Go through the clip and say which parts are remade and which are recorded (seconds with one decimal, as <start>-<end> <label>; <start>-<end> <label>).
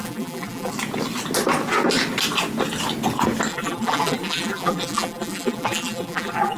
0.0-0.7 remade; 0.7-3.5 recorded; 3.5-6.6 remade